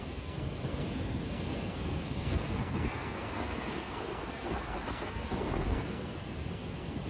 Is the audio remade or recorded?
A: remade